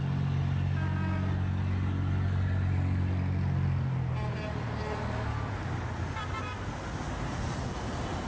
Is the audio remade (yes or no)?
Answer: no